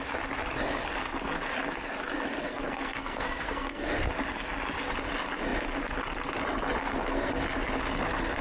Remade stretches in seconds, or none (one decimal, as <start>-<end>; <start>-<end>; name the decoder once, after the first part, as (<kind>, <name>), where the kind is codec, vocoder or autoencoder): 2.4-3.9 (codec, SNAC); 6.8-7.3